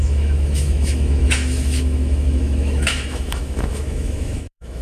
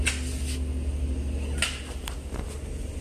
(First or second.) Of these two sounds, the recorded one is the second